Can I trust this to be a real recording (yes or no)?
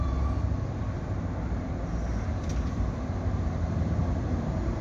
yes